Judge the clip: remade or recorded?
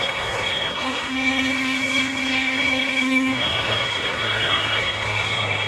remade